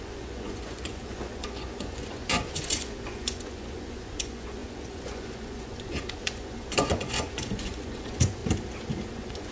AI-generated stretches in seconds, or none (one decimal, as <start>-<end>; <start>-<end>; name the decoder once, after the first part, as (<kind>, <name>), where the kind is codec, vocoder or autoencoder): 0.0-8.4 (vocoder, Vocos); 9.1-9.5